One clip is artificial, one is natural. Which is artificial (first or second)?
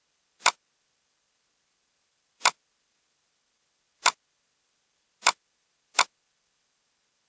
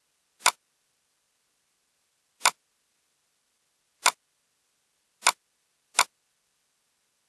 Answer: first